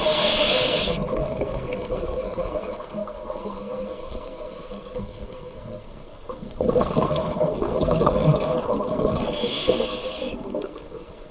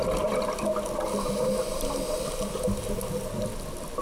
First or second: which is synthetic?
first